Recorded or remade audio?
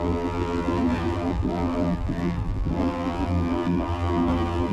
remade